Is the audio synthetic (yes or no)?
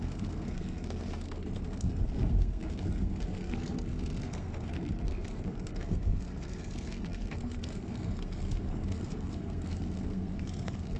yes